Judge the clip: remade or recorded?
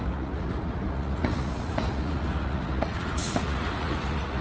remade